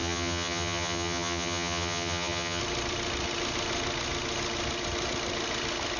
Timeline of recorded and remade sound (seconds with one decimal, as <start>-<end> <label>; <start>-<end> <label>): 0.0-2.6 remade; 2.6-6.0 recorded

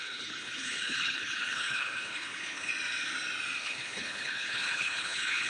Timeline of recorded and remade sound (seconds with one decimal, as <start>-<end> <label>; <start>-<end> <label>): 0.0-2.7 remade; 2.7-3.6 recorded; 3.6-5.5 remade

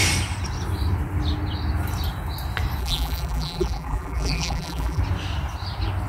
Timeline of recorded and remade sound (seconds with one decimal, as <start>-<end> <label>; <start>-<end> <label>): 0.0-2.8 recorded; 2.8-5.0 remade; 5.0-6.1 recorded

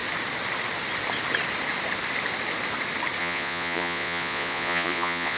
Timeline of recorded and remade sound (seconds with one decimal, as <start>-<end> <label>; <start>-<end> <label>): 0.0-3.2 recorded; 3.2-5.4 remade

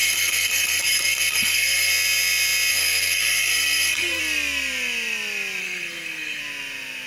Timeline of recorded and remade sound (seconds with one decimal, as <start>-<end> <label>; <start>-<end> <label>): 0.0-1.9 remade; 1.9-2.7 recorded; 2.7-4.2 remade; 4.2-5.6 recorded; 5.6-6.4 remade; 6.4-7.1 recorded

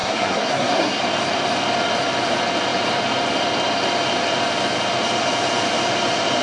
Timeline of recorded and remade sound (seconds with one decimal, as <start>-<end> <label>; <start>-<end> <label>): 0.0-1.0 remade; 1.0-6.4 recorded

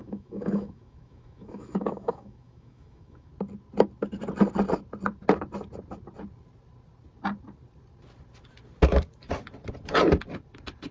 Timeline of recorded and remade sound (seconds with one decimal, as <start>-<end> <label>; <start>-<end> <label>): 0.0-3.3 remade; 3.3-10.9 recorded